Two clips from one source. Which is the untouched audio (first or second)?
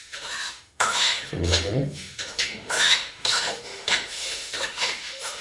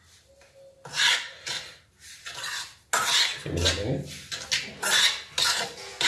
second